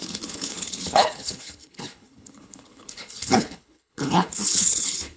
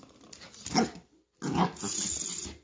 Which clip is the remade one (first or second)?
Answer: first